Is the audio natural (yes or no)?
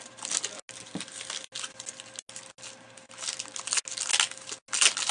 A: yes